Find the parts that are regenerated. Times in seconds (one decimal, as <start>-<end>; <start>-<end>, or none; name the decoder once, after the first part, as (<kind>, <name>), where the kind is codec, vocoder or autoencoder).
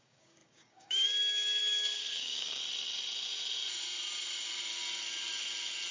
0.0-2.6 (codec, DAC)